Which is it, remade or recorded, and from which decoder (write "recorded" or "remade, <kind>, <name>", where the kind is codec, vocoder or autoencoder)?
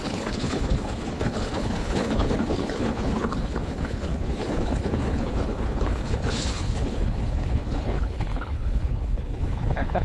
remade, codec, HILCodec